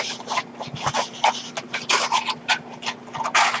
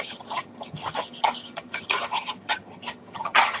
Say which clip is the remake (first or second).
second